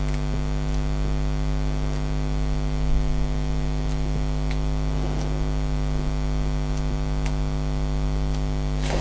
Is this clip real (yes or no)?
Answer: yes